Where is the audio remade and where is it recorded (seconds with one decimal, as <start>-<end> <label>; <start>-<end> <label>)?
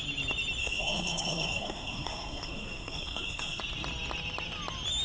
0.0-0.6 recorded; 0.6-3.6 remade; 3.6-5.0 recorded